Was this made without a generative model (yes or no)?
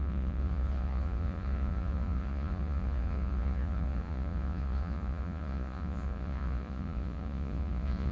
no